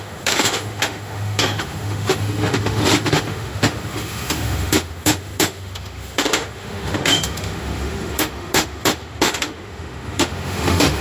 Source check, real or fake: fake